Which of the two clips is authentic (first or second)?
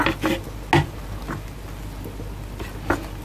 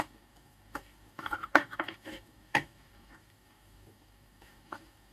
first